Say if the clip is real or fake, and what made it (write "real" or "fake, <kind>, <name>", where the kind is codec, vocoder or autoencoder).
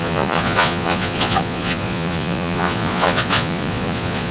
fake, vocoder, Vocos